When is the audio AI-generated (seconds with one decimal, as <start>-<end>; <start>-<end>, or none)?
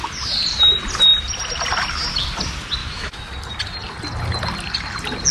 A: 2.8-3.3